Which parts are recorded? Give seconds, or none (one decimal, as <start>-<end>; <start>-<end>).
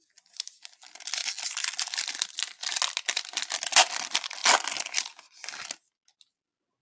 0.0-6.8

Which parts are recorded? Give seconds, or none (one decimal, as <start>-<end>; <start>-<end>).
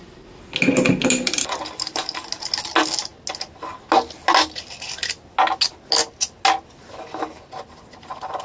0.0-8.4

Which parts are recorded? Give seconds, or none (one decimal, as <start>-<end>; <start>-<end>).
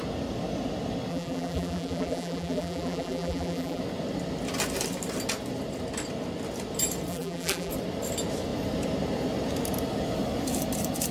0.0-1.1; 3.8-7.1; 7.7-11.1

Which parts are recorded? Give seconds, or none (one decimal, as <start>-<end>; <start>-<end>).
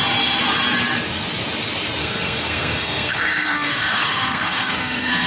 0.0-2.0